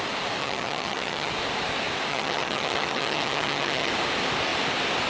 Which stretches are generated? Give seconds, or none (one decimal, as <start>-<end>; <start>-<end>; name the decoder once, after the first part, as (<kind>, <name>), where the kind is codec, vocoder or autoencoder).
0.4-1.3 (vocoder, HiFi-GAN); 2.1-3.9